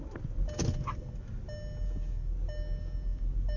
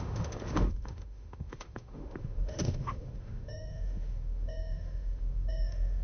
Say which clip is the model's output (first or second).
second